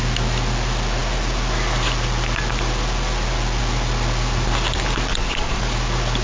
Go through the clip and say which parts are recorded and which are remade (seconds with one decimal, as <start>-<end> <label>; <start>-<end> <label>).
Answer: 0.0-5.1 recorded; 5.1-5.6 remade; 5.6-6.2 recorded